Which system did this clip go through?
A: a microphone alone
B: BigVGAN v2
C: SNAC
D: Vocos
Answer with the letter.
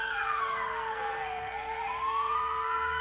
C